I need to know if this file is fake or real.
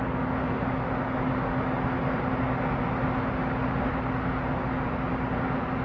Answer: real